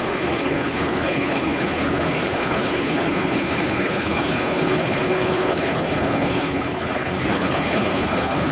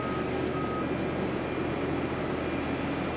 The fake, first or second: first